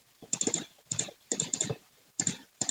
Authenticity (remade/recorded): remade